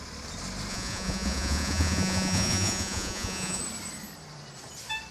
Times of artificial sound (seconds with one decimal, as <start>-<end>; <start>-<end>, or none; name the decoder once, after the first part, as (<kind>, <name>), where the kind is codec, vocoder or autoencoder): 0.7-3.6 (vocoder, Vocos)